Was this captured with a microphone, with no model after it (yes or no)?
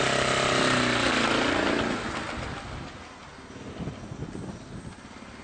yes